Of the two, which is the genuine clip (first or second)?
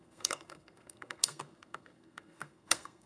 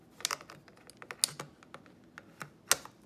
second